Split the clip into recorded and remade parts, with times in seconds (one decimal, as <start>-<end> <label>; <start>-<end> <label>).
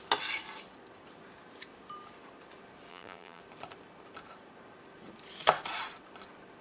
0.0-2.9 recorded; 2.9-3.4 remade; 3.4-6.6 recorded